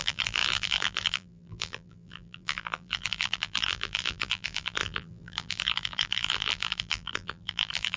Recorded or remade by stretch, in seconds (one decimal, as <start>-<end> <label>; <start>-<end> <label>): 0.0-8.0 remade